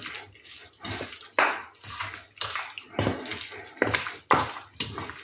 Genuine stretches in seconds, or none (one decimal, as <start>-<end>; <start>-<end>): 0.0-5.2